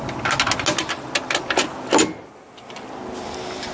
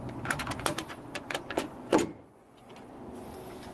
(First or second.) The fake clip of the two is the second